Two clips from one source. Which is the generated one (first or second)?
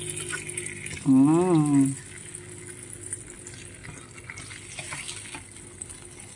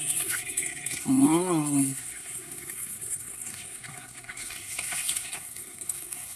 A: second